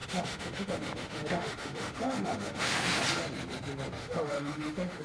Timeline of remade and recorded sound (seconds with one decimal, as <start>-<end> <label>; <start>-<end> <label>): 0.0-3.0 remade; 3.0-4.0 recorded; 4.0-5.0 remade